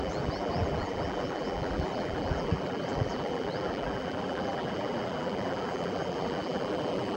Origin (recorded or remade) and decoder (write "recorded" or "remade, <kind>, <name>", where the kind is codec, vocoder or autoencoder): remade, vocoder, BigVGAN v2